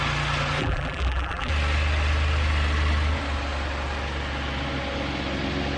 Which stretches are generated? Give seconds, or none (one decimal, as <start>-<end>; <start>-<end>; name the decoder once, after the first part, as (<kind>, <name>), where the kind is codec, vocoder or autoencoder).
0.6-1.5 (vocoder, BigVGAN v2)